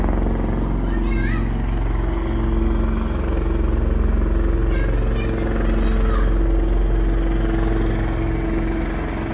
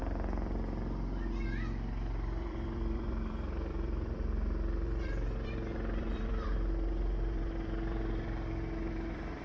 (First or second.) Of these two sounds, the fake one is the second